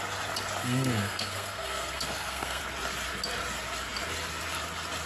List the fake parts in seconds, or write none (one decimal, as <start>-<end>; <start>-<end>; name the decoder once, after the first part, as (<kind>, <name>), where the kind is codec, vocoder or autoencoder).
0.6-2.6 (codec, SNAC)